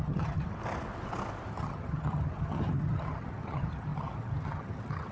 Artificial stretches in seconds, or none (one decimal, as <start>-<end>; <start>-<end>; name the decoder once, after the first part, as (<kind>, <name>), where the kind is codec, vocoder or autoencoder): 0.0-0.6 (vocoder, HiFi-GAN); 1.5-5.1